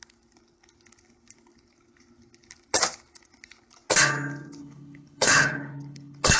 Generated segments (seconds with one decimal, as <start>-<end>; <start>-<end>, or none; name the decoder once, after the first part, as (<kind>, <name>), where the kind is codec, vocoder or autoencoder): 4.6-6.4 (codec, HILCodec)